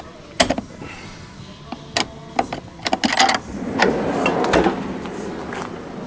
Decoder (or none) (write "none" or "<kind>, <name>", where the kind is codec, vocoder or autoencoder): none